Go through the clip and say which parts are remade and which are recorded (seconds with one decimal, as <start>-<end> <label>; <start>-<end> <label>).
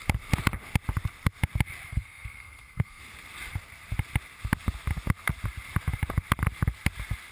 0.0-1.9 recorded; 1.9-3.0 remade; 3.0-7.3 recorded